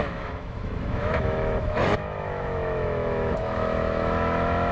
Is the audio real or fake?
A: fake